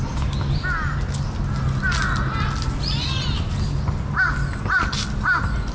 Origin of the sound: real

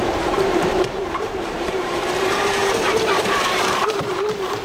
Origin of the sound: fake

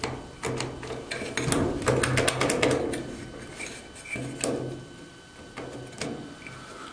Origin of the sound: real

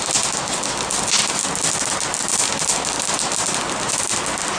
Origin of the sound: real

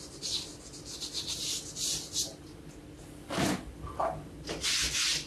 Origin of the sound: real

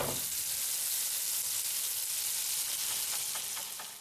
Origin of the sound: real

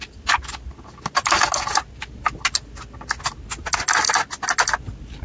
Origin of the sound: real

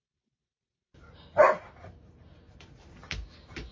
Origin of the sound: fake